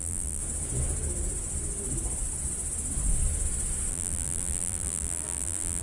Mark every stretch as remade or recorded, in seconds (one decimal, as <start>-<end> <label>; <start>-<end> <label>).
0.0-0.4 remade; 0.4-3.9 recorded; 3.9-5.8 remade